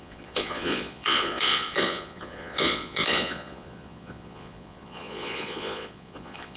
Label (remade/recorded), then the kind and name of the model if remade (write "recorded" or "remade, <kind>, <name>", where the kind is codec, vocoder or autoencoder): remade, vocoder, Vocos